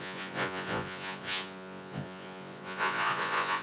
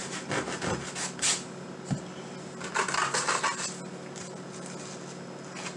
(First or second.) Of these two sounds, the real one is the second